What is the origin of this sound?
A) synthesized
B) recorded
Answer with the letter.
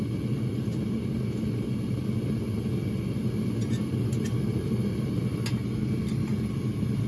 B